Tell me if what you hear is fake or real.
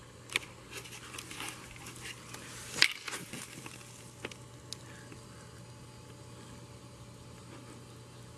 real